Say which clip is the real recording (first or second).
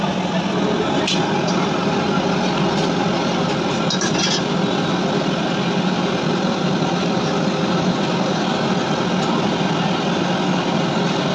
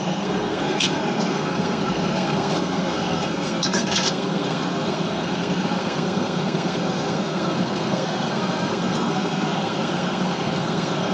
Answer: first